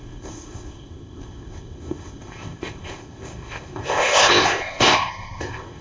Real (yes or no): no